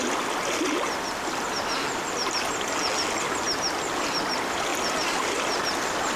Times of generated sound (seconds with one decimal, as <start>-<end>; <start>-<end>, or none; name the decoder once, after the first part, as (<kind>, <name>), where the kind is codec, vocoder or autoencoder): none